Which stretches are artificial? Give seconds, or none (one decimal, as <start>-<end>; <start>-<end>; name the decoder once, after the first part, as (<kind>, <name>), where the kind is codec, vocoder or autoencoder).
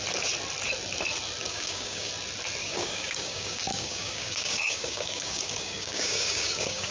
1.4-2.1 (codec, DAC); 2.6-6.9